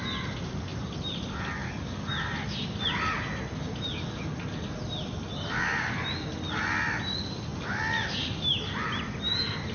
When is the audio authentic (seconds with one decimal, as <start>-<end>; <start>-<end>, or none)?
0.0-9.7